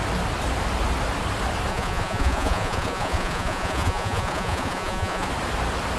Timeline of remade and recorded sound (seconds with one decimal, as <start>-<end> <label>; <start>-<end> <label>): 0.0-1.7 recorded; 1.7-5.3 remade; 5.3-6.0 recorded